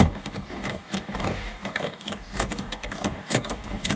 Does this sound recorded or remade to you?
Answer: remade